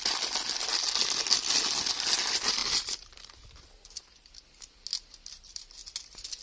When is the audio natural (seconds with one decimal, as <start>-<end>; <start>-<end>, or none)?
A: 0.0-2.6; 4.3-6.4